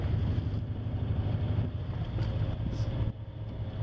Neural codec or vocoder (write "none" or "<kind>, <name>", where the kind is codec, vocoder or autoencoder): none